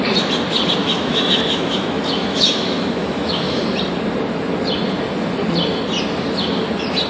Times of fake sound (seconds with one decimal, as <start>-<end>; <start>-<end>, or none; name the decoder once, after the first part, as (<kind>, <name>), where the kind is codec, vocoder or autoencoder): 0.8-3.6 (autoencoder, DAC-VAE)

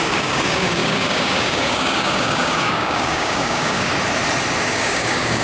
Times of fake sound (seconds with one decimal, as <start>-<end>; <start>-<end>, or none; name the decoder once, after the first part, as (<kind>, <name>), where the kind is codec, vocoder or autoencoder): 0.0-3.9 (codec, DAC); 4.6-5.4